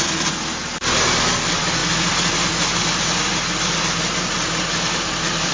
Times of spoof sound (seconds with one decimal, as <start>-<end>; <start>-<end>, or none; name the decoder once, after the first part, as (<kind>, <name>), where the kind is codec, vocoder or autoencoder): 0.0-0.6 (vocoder, BigVGAN v2); 1.2-1.8; 5.1-5.5